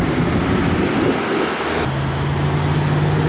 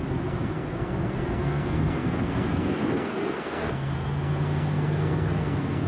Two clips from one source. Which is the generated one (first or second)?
second